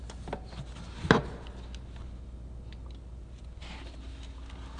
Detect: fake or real real